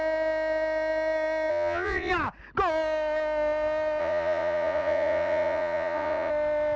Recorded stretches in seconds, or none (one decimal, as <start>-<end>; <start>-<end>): 0.0-1.5; 2.1-4.0; 6.3-6.8